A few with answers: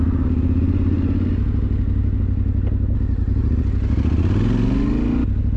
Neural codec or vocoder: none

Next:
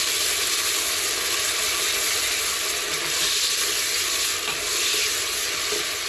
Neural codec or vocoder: none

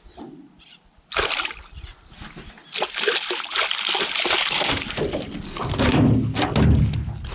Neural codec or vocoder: none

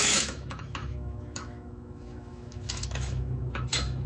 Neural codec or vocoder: autoencoder, DAC-VAE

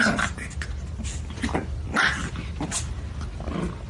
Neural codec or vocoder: none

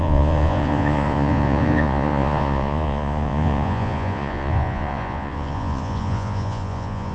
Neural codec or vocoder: vocoder, Vocos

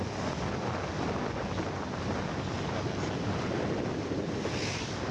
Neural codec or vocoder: none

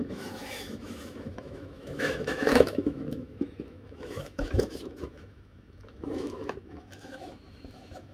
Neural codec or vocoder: autoencoder, DAC-VAE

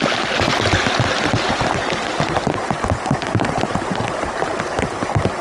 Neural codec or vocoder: none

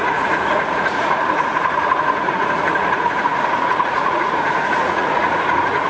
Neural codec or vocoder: vocoder, Vocos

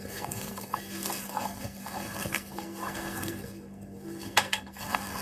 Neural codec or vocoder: codec, SNAC